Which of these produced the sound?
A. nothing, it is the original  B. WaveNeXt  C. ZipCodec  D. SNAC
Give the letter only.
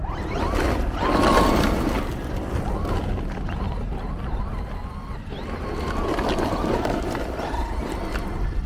A